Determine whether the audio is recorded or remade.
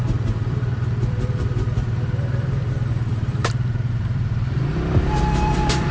remade